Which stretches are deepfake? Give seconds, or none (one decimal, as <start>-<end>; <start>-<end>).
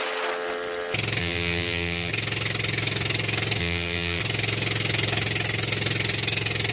1.2-2.1; 3.6-4.2